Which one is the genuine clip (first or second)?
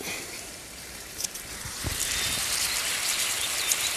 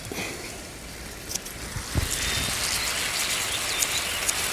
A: second